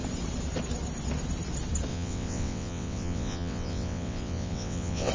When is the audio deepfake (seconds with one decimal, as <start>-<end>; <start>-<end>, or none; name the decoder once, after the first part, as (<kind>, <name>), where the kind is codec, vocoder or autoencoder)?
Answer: 1.9-5.1 (vocoder, WaveNeXt)